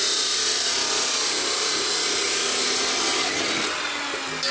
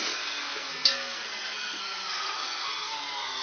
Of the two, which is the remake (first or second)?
second